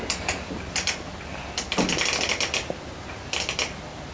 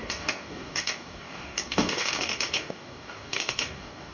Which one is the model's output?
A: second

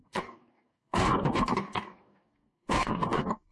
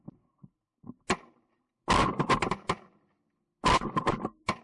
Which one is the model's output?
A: first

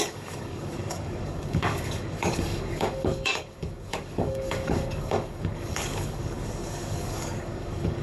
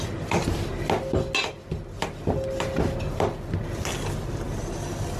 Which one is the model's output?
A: first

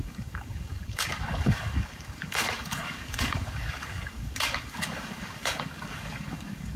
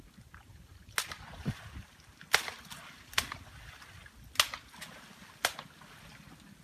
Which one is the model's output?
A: first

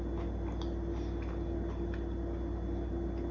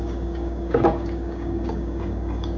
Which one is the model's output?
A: second